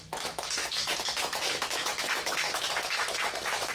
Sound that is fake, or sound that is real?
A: fake